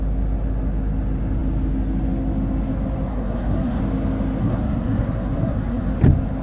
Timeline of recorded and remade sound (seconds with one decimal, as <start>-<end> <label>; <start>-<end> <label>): 0.0-3.1 recorded; 3.1-3.8 remade; 3.8-4.4 recorded; 4.4-5.9 remade; 5.9-6.4 recorded